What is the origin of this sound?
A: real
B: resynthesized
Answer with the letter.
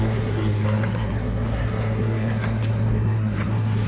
B